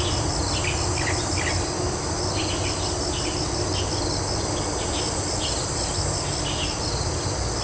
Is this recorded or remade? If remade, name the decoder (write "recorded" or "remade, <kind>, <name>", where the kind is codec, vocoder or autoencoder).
recorded